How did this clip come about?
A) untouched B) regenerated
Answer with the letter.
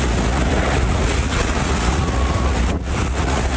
B